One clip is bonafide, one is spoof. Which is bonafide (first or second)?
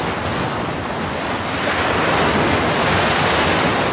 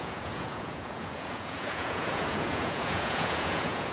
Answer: first